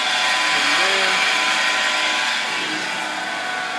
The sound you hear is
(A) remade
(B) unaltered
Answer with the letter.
B